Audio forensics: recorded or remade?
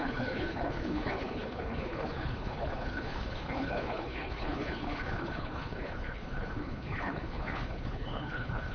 remade